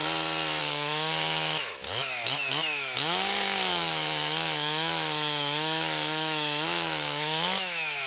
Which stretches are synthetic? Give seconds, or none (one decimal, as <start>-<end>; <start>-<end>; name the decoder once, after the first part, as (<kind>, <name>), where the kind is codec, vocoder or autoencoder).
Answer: 0.6-8.1 (autoencoder, DAC-VAE)